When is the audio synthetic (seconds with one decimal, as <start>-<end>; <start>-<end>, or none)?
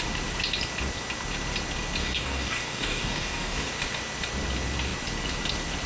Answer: 2.0-3.7